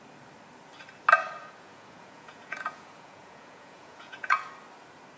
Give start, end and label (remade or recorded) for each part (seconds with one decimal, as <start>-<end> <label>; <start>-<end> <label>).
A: 0.0-1.4 recorded; 1.4-4.5 remade; 4.5-5.2 recorded

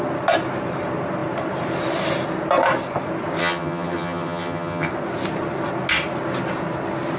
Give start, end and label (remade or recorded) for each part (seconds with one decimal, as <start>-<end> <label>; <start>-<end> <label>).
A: 0.0-3.4 recorded; 3.4-4.9 remade; 4.9-7.2 recorded

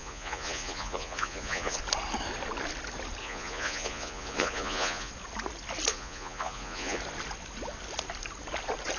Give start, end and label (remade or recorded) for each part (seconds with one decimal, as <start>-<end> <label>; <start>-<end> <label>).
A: 0.0-1.8 remade; 1.8-3.2 recorded; 3.2-5.1 remade; 5.1-5.9 recorded; 5.9-7.0 remade; 7.0-9.0 recorded

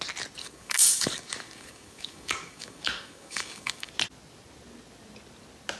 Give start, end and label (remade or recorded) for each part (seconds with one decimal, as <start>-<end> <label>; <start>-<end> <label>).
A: 0.0-0.4 recorded; 0.4-3.9 remade; 3.9-5.8 recorded